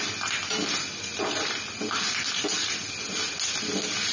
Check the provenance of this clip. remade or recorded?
recorded